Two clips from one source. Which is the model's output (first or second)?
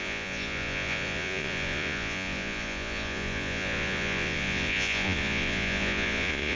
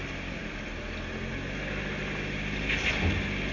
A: first